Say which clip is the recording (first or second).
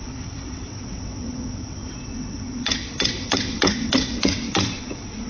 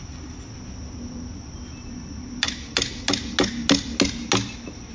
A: second